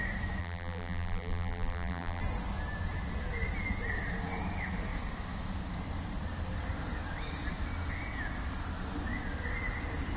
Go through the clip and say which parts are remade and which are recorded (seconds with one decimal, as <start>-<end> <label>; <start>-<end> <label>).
0.0-0.4 recorded; 0.4-2.2 remade; 2.2-10.2 recorded